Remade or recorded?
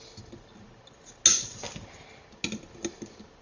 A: recorded